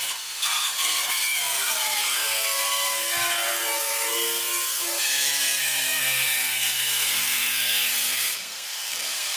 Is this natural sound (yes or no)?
no